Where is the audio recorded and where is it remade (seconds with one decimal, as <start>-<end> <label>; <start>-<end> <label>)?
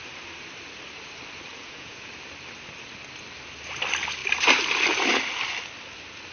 0.0-1.5 recorded; 1.5-2.1 remade; 2.1-6.3 recorded